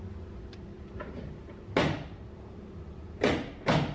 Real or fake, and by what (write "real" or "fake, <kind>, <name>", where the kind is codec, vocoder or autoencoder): real